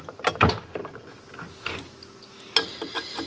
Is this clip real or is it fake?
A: real